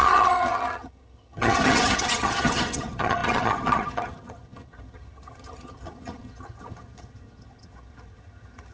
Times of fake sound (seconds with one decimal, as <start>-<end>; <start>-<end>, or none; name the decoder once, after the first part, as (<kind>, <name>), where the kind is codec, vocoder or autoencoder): 0.0-8.7 (vocoder, HiFi-GAN)